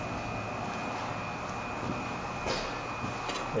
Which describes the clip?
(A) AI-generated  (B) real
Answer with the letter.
B